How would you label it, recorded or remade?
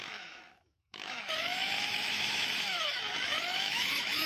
remade